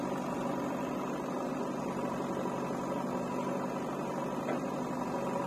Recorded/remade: recorded